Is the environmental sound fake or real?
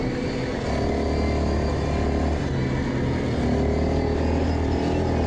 real